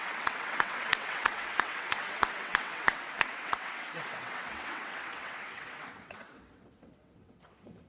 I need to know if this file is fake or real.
fake